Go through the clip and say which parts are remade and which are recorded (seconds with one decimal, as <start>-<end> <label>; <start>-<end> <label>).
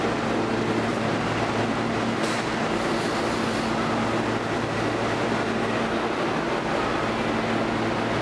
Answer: 0.0-0.9 recorded; 0.9-2.8 remade; 2.8-8.2 recorded